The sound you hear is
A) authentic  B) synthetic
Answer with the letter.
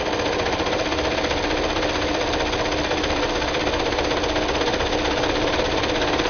A